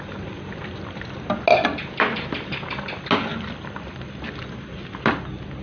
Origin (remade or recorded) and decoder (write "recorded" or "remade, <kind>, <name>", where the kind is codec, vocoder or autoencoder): recorded